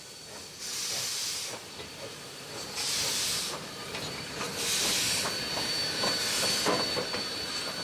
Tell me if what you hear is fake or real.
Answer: fake